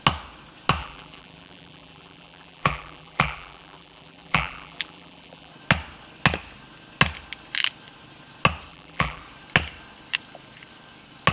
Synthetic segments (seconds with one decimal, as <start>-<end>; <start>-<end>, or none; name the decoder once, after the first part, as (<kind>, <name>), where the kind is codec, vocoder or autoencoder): 0.8-5.5 (vocoder, BigVGAN v2); 8.7-9.2